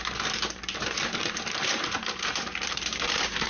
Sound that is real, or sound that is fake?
fake